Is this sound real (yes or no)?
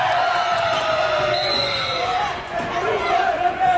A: no